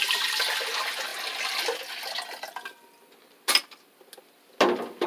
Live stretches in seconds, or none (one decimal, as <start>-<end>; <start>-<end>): 0.0-5.1